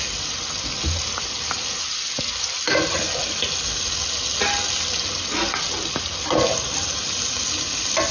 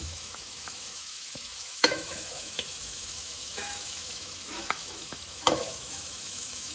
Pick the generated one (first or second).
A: second